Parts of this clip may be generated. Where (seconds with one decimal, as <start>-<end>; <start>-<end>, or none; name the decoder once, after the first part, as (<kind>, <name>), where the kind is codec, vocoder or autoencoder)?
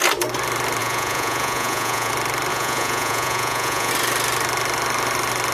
0.8-2.1 (vocoder, Vocos); 2.5-3.9